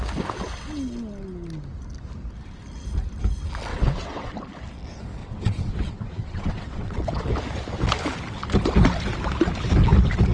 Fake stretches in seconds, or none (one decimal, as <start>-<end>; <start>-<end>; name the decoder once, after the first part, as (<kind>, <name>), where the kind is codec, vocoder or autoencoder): 3.7-4.3 (vocoder, WaveNeXt); 5.2-7.3